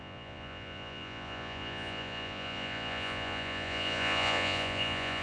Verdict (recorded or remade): remade